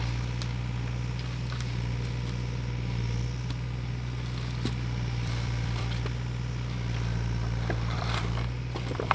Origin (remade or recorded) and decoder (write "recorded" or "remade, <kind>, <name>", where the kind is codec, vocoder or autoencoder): remade, vocoder, BigVGAN v2